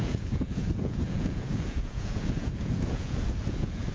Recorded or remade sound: remade